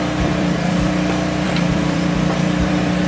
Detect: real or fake fake